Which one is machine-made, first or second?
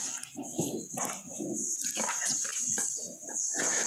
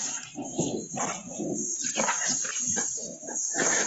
second